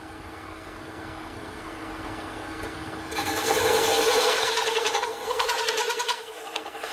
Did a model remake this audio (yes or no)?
yes